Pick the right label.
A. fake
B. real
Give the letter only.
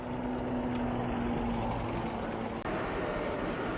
B